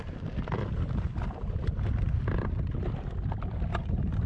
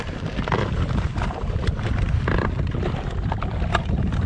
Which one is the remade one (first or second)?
second